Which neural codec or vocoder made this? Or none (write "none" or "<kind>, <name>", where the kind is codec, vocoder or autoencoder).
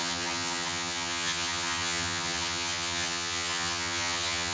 vocoder, HiFi-GAN